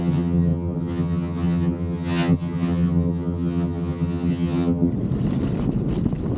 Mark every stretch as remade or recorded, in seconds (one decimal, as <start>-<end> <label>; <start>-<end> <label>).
0.0-4.9 remade; 4.9-6.4 recorded